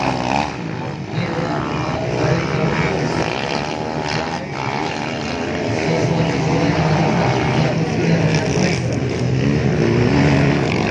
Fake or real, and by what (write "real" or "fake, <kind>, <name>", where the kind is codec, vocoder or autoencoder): real